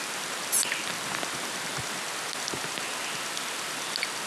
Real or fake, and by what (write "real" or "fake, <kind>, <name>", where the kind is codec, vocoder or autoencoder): fake, vocoder, BigVGAN v2